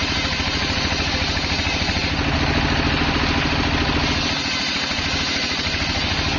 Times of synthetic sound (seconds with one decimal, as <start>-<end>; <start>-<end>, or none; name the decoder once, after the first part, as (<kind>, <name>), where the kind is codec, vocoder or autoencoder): none